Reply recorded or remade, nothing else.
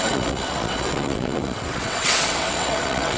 remade